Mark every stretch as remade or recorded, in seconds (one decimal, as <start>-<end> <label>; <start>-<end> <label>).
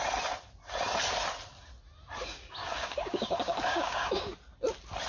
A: 0.0-2.6 recorded; 2.6-4.3 remade; 4.3-5.1 recorded